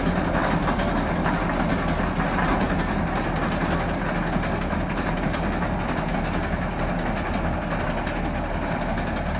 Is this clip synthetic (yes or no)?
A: no